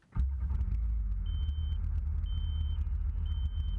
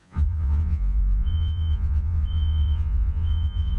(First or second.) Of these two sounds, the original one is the first